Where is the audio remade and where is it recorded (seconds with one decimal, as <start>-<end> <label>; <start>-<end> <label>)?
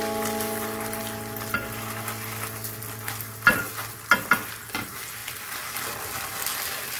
0.0-7.0 recorded